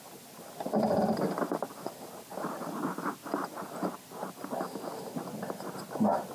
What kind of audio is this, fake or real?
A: real